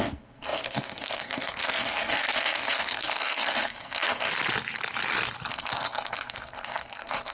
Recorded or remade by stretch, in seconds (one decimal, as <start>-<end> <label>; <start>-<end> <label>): 0.0-4.3 remade; 4.3-5.5 recorded; 5.5-7.3 remade